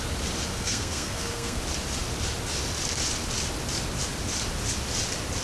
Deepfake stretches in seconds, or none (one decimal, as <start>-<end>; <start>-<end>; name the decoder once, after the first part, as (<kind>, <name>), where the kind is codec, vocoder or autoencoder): 0.5-1.6 (codec, SNAC)